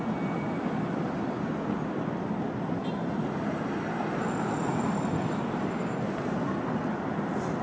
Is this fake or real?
real